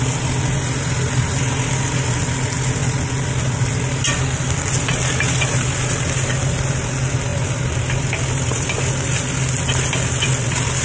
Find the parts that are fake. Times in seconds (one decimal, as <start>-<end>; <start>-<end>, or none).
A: none